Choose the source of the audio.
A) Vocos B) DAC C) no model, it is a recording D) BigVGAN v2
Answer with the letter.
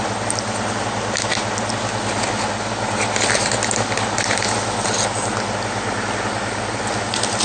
C